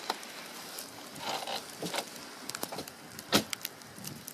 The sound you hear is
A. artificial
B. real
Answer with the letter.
B